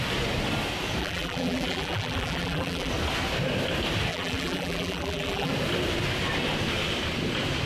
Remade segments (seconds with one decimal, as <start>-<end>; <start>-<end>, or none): 1.0-2.9; 4.1-5.5